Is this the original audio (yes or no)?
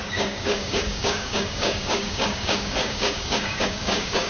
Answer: no